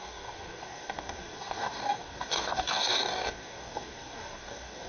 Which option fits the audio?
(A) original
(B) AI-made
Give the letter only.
B